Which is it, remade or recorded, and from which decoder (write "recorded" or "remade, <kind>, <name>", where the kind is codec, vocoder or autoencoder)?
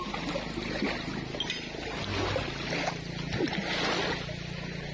recorded